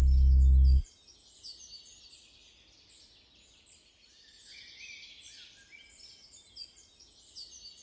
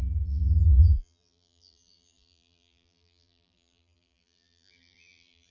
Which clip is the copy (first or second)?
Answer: second